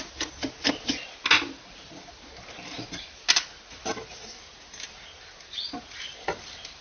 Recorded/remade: recorded